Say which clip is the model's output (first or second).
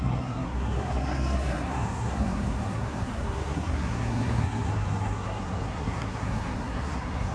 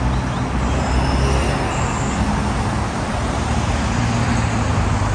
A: first